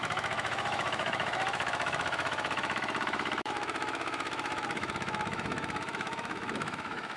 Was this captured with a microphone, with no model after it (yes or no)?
no